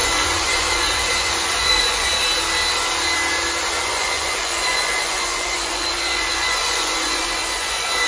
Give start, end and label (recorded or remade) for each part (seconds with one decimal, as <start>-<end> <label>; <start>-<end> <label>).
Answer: 0.0-2.1 remade; 2.1-3.8 recorded; 3.8-8.1 remade